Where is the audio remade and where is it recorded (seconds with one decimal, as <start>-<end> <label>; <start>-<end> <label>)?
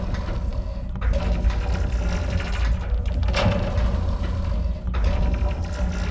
0.0-6.1 recorded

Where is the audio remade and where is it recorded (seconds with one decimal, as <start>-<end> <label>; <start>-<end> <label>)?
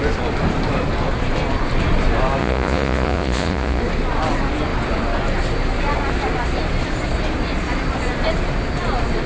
0.0-2.4 recorded; 2.4-3.8 remade; 3.8-9.3 recorded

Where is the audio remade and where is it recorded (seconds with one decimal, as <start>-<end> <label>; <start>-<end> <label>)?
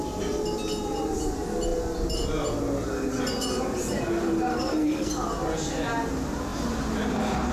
0.0-4.5 recorded; 4.5-5.1 remade; 5.1-7.5 recorded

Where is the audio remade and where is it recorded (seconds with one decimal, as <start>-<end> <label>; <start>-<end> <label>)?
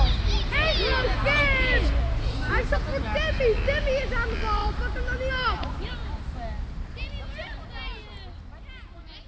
0.0-9.3 recorded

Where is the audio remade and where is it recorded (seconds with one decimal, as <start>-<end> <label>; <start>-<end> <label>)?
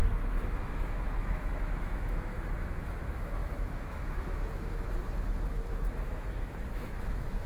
0.0-7.5 remade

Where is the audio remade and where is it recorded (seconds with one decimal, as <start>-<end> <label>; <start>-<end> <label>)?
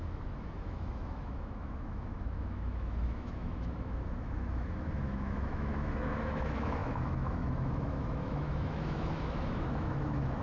0.0-10.4 remade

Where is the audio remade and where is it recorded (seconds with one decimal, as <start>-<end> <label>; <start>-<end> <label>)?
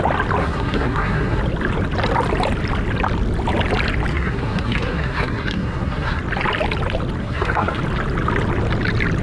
0.0-0.4 recorded; 0.4-1.4 remade; 1.4-4.1 recorded; 4.1-6.2 remade; 6.2-7.2 recorded; 7.2-7.8 remade; 7.8-9.2 recorded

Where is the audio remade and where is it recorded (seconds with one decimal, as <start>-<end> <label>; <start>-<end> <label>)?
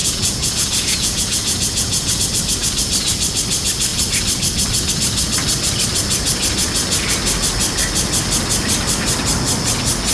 0.0-2.2 remade; 2.2-10.1 recorded